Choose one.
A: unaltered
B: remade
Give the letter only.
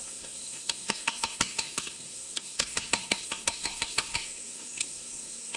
B